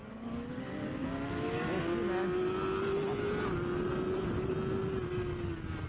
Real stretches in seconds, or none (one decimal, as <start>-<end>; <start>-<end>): 0.0-5.9